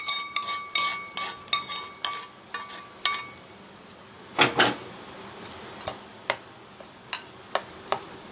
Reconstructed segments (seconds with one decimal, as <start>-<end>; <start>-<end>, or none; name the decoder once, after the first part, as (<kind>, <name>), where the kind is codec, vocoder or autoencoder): none